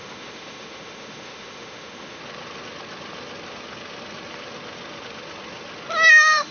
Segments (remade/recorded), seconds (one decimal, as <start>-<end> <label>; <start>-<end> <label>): 0.0-2.2 remade; 2.2-6.1 recorded; 6.1-6.5 remade